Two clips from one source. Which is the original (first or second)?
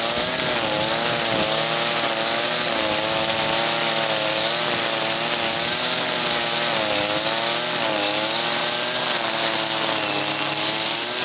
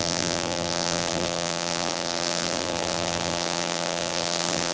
first